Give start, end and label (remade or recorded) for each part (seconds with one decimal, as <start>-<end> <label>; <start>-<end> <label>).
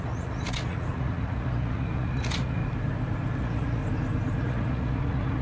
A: 0.0-2.6 remade; 2.6-3.4 recorded; 3.4-3.8 remade; 3.8-4.4 recorded; 4.4-5.4 remade